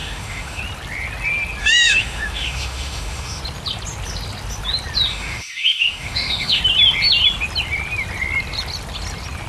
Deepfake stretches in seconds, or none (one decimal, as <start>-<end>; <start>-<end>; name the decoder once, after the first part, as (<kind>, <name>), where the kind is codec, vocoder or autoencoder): 0.0-0.6 (autoencoder, DAC-VAE); 1.6-3.4; 5.1-6.6